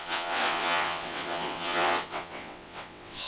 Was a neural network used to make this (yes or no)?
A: yes